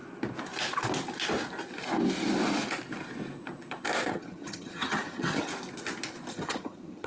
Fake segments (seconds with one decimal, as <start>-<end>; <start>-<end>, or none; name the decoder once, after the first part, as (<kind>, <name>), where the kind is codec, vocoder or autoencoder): 4.1-5.5 (vocoder, HiFi-GAN); 6.3-7.1